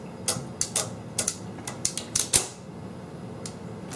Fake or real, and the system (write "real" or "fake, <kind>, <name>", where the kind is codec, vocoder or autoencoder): real